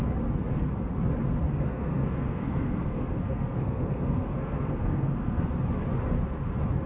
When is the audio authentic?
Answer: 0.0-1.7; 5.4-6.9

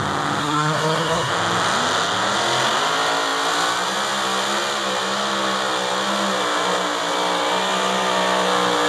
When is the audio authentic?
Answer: 0.0-0.4; 1.3-8.9